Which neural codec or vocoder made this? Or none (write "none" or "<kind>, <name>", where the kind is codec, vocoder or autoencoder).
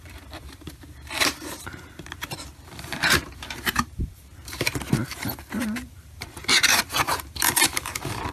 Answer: vocoder, BigVGAN v2